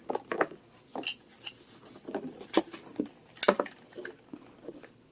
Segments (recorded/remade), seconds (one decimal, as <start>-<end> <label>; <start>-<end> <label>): 0.0-5.1 recorded

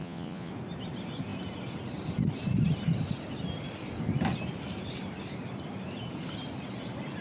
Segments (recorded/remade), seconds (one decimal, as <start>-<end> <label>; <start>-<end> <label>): 0.0-0.5 remade; 0.5-7.2 recorded